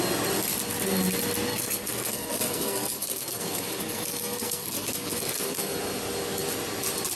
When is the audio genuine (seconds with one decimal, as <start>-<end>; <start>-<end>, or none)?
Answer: 0.0-1.5; 5.8-7.2